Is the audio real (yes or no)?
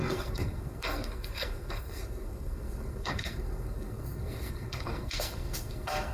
no